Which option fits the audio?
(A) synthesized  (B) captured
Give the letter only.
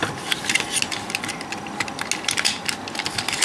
B